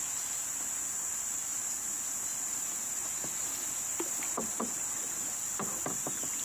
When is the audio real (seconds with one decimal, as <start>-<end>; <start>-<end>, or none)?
0.0-6.4